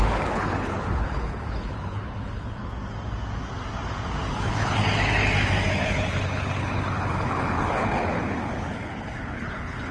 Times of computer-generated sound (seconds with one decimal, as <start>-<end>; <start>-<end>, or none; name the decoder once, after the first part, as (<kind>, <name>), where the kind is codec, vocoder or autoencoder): 0.0-2.6 (codec, HILCodec); 4.3-4.8; 5.7-9.9